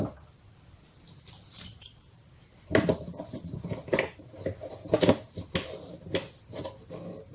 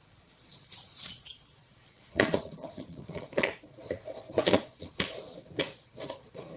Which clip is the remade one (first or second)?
second